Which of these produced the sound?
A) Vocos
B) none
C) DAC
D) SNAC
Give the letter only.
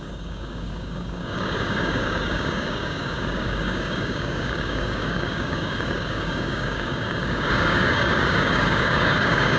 C